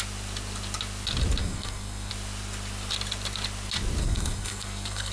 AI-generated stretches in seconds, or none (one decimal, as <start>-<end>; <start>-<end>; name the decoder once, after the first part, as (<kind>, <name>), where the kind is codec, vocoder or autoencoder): 1.4-2.1 (codec, SNAC); 4.0-5.1